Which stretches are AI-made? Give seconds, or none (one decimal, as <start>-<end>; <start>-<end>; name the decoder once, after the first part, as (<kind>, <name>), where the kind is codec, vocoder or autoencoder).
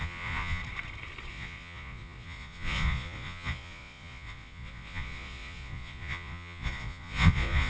0.0-0.6 (vocoder, Vocos); 1.3-7.7